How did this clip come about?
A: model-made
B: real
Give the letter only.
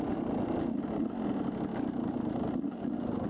B